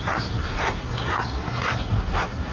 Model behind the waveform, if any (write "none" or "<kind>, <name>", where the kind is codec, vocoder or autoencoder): codec, SNAC